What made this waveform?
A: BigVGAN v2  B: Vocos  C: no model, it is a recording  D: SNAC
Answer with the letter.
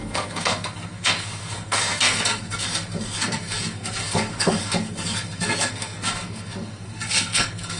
D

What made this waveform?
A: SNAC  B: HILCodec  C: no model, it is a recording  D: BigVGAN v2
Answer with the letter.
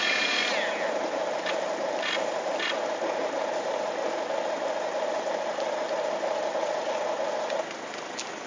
C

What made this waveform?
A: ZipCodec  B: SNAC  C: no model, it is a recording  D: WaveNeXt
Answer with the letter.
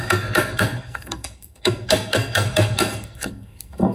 B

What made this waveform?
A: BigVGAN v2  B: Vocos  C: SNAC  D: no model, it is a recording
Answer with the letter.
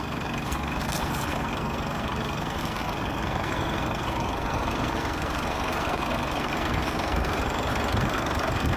C